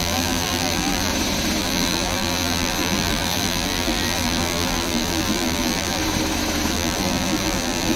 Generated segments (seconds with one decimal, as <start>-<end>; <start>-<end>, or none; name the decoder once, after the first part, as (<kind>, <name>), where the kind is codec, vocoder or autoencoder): 0.0-1.1 (vocoder, BigVGAN v2); 1.6-6.0; 6.7-8.0